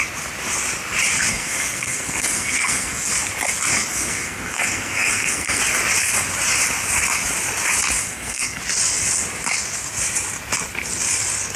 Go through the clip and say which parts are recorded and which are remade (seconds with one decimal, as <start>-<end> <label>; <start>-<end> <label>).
0.0-1.3 recorded; 1.3-3.1 remade; 3.1-3.9 recorded; 3.9-5.6 remade; 5.6-8.0 recorded; 8.0-8.6 remade; 8.6-11.6 recorded